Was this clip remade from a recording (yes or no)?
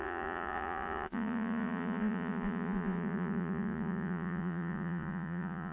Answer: yes